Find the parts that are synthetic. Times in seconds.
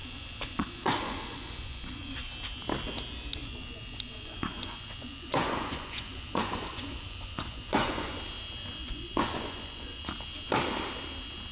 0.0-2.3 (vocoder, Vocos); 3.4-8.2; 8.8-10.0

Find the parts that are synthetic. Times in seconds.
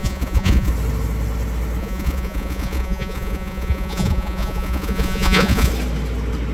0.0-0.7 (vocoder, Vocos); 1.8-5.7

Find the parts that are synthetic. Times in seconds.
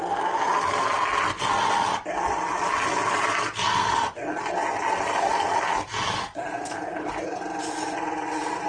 none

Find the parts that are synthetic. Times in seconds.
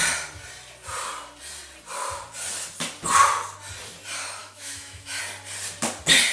4.4-5.2 (autoencoder, DAC-VAE)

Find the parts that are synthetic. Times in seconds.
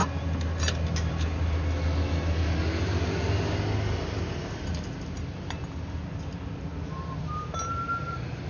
none